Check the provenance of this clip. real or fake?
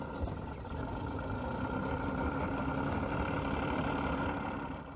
real